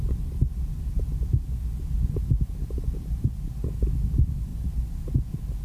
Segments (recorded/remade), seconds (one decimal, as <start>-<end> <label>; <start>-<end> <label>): 0.0-0.7 remade; 0.7-4.1 recorded; 4.1-4.5 remade; 4.5-5.6 recorded